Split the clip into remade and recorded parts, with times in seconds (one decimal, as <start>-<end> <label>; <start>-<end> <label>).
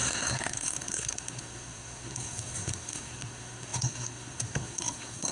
0.0-5.3 remade